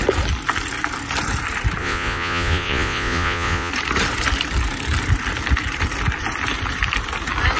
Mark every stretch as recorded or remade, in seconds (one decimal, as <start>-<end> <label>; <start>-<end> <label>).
0.0-1.8 recorded; 1.8-3.7 remade; 3.7-7.6 recorded